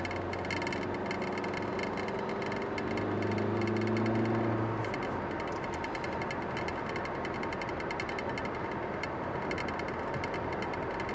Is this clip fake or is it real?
real